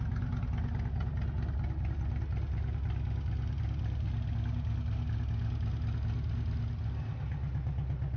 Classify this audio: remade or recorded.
recorded